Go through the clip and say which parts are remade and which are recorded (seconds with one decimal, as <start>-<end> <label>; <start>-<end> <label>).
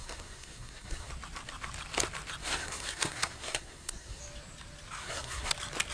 0.0-1.1 remade; 1.1-2.4 recorded; 2.4-4.2 remade; 4.2-5.0 recorded; 5.0-5.5 remade; 5.5-5.9 recorded